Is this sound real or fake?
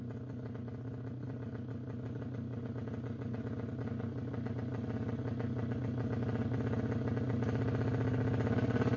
real